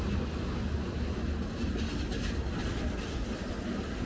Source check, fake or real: real